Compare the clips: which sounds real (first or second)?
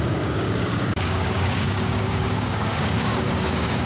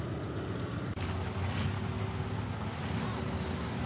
second